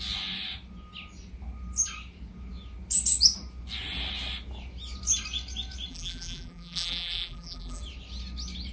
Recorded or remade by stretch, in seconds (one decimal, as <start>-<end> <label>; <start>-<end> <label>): 0.0-5.9 recorded; 5.9-7.8 remade; 7.8-8.7 recorded